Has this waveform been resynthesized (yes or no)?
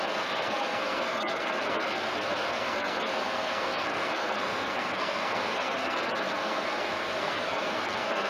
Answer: yes